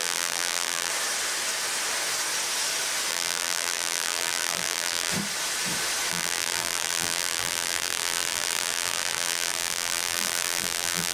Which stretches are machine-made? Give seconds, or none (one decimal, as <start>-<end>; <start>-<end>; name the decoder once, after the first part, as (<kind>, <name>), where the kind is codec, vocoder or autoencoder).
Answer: 0.0-0.9 (vocoder, BigVGAN v2); 3.1-5.1; 6.1-11.1